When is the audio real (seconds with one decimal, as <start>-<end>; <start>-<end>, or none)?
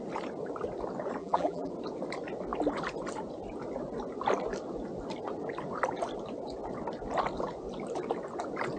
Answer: 0.0-1.2; 1.7-8.8